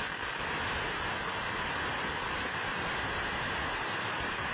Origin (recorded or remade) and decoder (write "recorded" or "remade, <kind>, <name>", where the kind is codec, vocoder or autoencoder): recorded